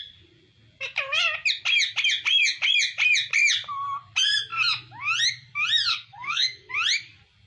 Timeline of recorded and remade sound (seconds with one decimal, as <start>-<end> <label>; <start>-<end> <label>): 0.0-5.9 recorded; 5.9-6.7 remade; 6.7-7.5 recorded